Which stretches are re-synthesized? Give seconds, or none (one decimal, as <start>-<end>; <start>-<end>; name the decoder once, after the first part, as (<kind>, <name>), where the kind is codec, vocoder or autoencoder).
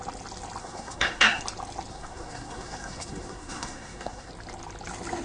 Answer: 0.6-1.4 (codec, SNAC); 1.9-4.3